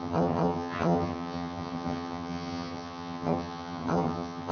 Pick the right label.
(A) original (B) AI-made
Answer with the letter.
B